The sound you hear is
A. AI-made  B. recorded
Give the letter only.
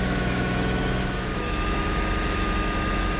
A